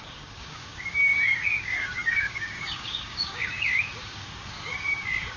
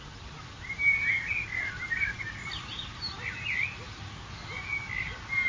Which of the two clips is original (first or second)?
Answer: second